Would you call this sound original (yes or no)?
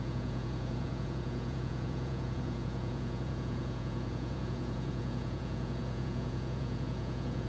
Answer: no